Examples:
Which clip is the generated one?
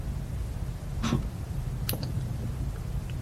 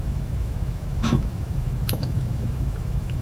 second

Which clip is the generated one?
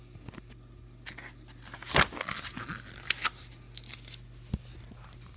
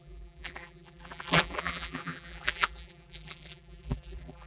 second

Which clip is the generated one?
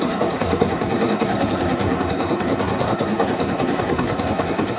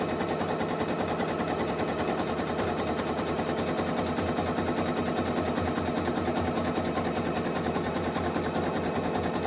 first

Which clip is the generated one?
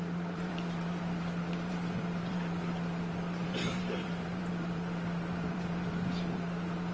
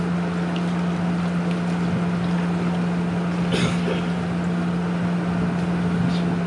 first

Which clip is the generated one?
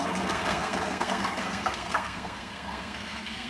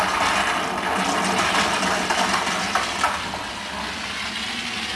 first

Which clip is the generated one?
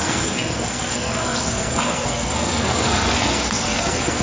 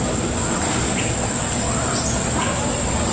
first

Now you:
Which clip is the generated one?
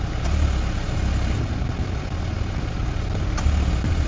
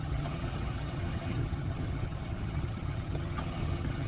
second